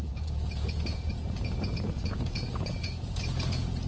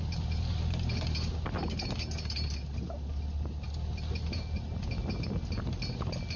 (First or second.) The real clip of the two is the second